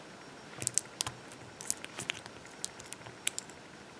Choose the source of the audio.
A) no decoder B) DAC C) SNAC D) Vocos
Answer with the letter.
A